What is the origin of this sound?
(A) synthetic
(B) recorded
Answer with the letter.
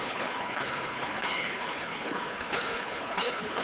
A